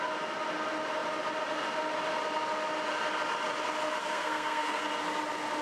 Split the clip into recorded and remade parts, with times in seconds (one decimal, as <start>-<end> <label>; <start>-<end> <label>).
0.0-4.0 recorded; 4.0-4.8 remade; 4.8-5.6 recorded